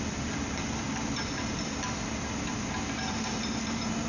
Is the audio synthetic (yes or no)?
no